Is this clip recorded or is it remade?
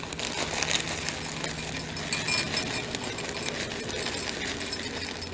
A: recorded